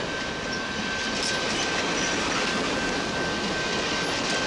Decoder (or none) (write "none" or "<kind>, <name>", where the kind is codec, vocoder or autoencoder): none